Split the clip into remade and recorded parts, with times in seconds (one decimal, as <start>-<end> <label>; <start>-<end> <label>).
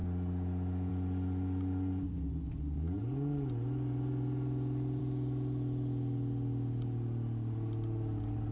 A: 0.0-8.5 recorded